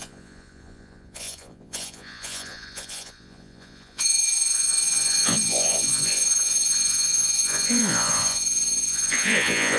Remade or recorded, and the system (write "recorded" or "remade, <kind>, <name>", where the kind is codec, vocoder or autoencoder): remade, vocoder, Vocos